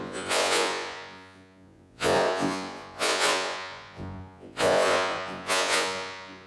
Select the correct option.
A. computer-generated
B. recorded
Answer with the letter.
A